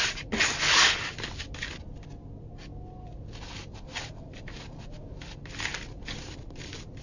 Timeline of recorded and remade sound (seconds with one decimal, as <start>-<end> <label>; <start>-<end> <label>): 0.0-3.7 recorded; 3.7-4.4 remade; 4.4-5.7 recorded; 5.7-7.0 remade